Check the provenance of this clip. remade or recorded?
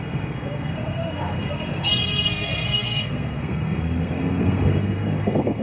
remade